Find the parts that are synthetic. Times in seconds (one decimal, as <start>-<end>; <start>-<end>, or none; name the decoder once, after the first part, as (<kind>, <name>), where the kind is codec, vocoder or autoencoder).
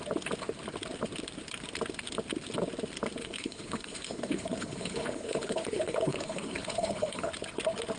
3.2-7.3 (codec, HILCodec)